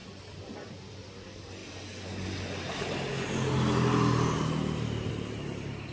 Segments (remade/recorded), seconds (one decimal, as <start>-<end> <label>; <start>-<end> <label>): 0.0-5.9 recorded